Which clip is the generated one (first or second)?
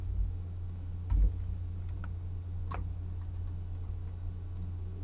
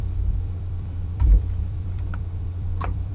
second